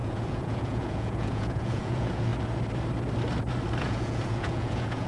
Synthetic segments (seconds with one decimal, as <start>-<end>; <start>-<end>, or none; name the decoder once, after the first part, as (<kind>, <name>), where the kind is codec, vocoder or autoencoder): 0.0-2.3 (vocoder, Vocos); 3.8-5.1